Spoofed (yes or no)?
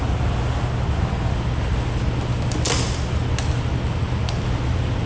no